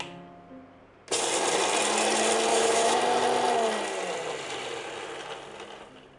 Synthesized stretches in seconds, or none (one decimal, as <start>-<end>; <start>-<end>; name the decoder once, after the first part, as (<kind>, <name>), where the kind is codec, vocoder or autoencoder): 2.5-3.0 (autoencoder, DAC-VAE)